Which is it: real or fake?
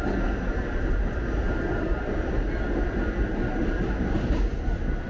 real